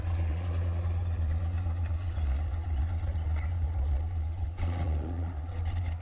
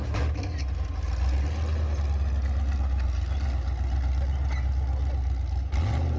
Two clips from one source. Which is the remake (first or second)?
first